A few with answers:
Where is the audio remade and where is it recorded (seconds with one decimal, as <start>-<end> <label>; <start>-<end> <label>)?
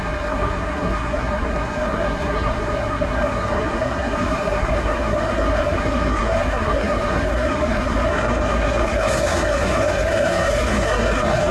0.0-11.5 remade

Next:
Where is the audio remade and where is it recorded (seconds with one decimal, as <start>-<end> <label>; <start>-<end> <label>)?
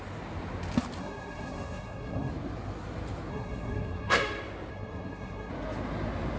0.0-1.0 recorded; 1.0-2.3 remade; 2.3-3.3 recorded; 3.3-4.2 remade; 4.2-4.7 recorded; 4.7-5.5 remade; 5.5-6.4 recorded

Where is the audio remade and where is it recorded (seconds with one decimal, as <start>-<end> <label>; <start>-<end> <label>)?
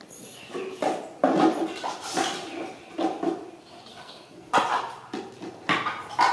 0.0-3.9 recorded; 3.9-4.5 remade; 4.5-6.3 recorded